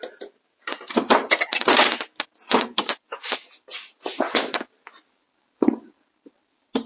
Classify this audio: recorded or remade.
recorded